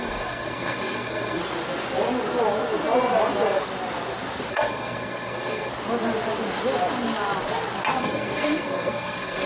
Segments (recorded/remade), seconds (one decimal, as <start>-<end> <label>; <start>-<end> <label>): 0.0-1.4 remade; 1.4-4.5 recorded; 4.5-5.7 remade; 5.7-8.0 recorded; 8.0-9.5 remade